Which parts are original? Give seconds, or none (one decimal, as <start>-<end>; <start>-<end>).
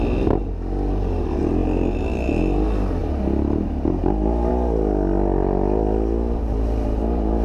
0.0-7.4